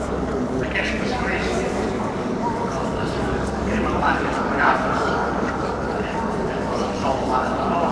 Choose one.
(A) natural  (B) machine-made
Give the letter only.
B